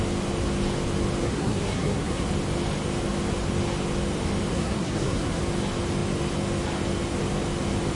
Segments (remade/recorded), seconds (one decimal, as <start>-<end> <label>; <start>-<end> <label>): 0.0-1.2 recorded; 1.2-2.3 remade; 2.3-4.5 recorded; 4.5-5.4 remade; 5.4-8.0 recorded